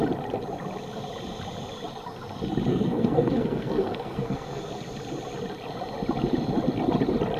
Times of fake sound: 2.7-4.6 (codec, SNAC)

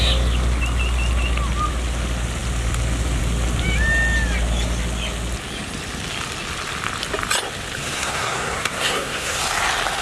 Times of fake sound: 7.8-9.4 (codec, SNAC)

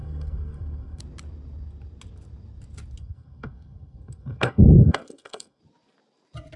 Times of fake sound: 0.0-1.0 (codec, SNAC); 3.0-5.6

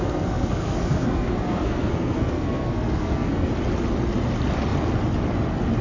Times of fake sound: 0.0-3.5 (codec, SNAC)

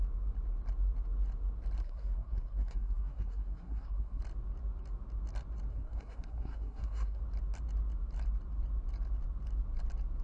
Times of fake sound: 1.8-4.2 (codec, SNAC); 5.7-7.2

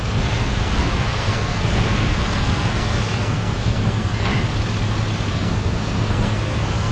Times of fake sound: 0.0-4.3 (codec, SNAC); 5.3-6.9

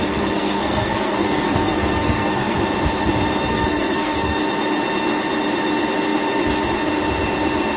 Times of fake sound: 0.0-2.6 (codec, SNAC); 3.5-4.4

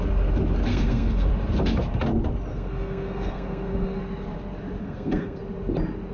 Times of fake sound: 0.7-1.3 (codec, SNAC); 2.5-4.0; 4.8-5.4